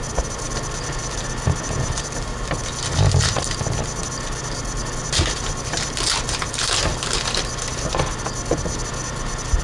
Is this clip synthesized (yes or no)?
no